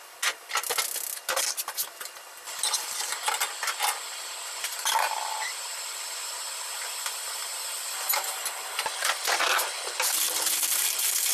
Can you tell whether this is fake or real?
real